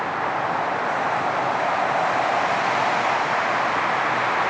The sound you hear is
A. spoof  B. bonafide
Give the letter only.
B